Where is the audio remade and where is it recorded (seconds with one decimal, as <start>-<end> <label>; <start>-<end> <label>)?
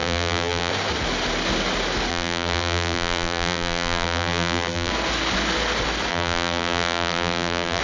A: 0.0-0.7 remade; 0.7-2.1 recorded; 2.1-4.9 remade; 4.9-6.1 recorded; 6.1-7.8 remade